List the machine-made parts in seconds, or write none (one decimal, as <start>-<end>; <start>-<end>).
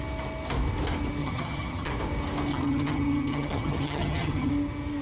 1.2-1.9; 2.5-4.5